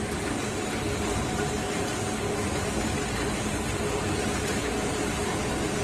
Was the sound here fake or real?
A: real